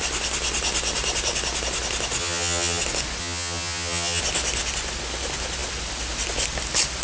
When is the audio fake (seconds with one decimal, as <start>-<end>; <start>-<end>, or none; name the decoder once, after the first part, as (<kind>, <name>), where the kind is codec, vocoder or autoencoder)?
2.2-2.8 (vocoder, HiFi-GAN); 3.2-4.2